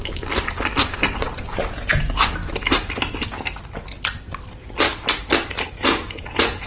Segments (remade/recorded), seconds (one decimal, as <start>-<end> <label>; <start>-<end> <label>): 0.0-1.4 recorded; 1.4-2.4 remade; 2.4-5.7 recorded; 5.7-6.7 remade